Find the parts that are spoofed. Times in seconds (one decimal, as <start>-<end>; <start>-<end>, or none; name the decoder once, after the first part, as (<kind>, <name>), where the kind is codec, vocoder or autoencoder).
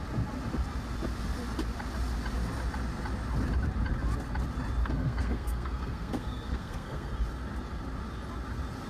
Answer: 4.8-7.1 (codec, SNAC)